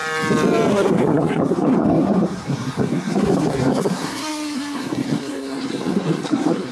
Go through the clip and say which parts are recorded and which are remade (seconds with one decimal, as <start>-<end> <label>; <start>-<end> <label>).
0.0-0.7 recorded; 0.7-6.7 remade